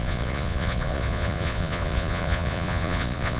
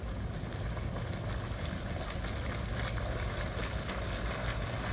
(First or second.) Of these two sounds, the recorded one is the second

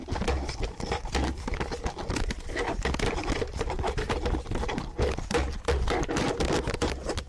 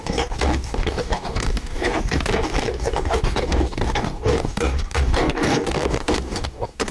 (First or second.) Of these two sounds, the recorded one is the first